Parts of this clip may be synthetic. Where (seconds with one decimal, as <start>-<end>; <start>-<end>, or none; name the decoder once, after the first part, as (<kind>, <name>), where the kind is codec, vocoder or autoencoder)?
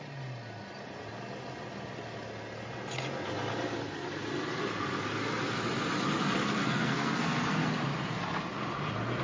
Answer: 6.6-7.7 (codec, SNAC)